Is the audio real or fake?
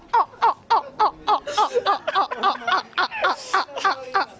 real